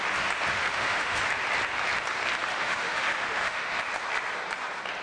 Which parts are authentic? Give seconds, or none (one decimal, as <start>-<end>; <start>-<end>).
0.0-0.6; 1.2-2.5; 3.8-5.0